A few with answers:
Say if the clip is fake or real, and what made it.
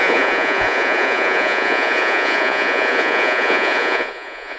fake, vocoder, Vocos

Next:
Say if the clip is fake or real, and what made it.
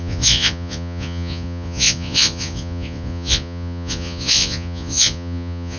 fake, vocoder, Vocos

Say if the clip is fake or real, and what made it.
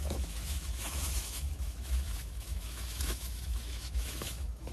fake, autoencoder, DAC-VAE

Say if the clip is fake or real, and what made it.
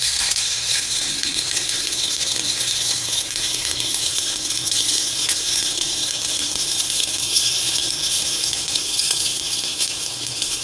fake, codec, SNAC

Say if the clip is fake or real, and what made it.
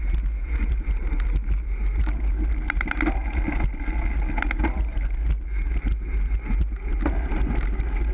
real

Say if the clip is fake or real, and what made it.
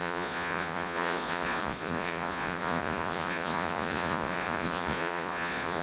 fake, vocoder, Vocos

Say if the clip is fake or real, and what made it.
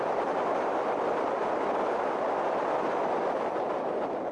real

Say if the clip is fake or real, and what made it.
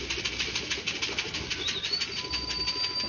real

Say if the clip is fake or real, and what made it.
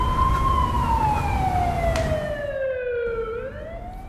real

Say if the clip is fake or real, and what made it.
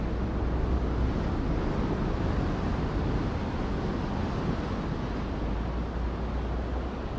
real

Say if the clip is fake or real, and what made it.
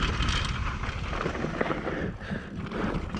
fake, vocoder, BigVGAN v2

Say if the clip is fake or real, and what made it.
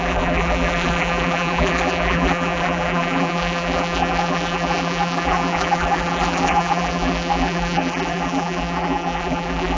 fake, vocoder, BigVGAN v2